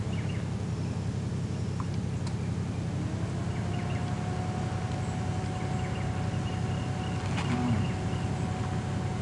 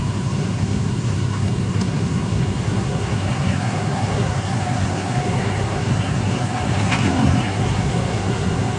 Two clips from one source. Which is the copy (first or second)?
second